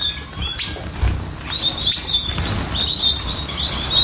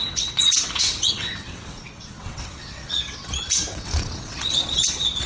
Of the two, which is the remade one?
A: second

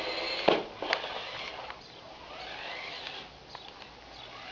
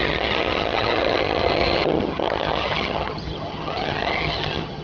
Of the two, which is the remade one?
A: second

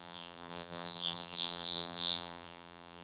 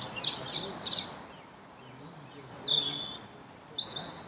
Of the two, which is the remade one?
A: first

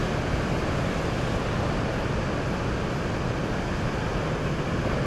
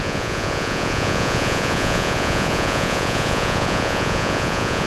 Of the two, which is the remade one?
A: second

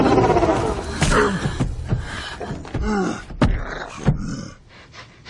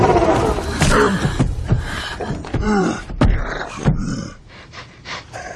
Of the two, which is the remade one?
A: second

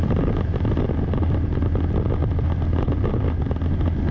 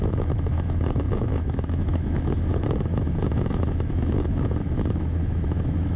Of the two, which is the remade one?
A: second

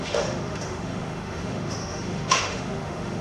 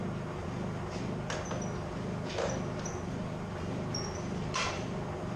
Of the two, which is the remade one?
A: first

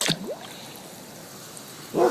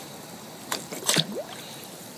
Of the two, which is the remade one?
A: second